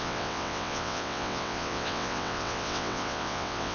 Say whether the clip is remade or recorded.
remade